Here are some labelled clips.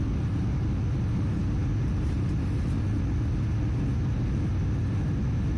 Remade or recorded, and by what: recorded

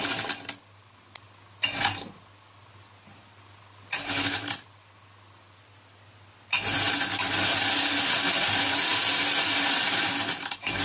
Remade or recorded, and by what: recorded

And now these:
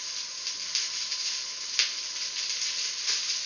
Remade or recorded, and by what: recorded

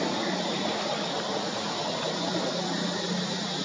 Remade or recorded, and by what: recorded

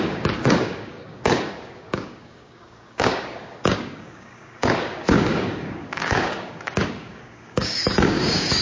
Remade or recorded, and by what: remade, codec, DAC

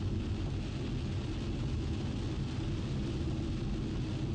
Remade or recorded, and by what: recorded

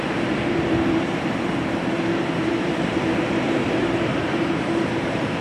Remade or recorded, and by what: remade, vocoder, BigVGAN v2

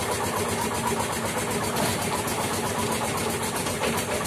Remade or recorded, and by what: recorded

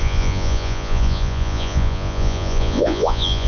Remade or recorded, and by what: remade, vocoder, Vocos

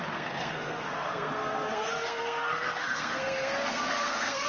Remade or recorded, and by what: remade, codec, SNAC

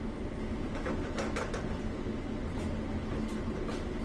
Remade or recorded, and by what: recorded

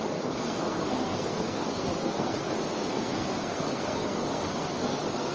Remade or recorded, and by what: remade, codec, SNAC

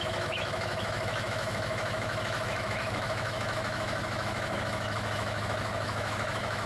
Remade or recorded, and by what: remade, autoencoder, DAC-VAE